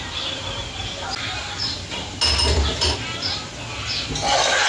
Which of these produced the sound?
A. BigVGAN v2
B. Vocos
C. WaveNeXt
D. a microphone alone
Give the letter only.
D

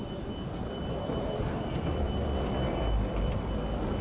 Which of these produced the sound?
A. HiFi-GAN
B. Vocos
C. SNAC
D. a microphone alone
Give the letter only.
D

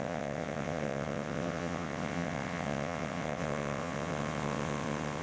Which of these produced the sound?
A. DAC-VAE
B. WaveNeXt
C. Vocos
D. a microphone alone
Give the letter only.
B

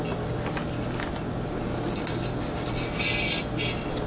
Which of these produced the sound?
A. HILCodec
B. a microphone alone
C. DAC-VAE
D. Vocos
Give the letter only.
B